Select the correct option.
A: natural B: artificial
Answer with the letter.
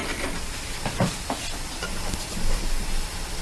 A